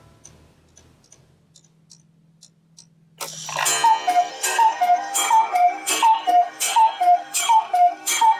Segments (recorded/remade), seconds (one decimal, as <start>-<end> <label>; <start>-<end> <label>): 0.0-4.3 recorded; 4.3-8.4 remade